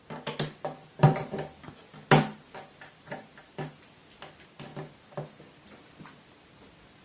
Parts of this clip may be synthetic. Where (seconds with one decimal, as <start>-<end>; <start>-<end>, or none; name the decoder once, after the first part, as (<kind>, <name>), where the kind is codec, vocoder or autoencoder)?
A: none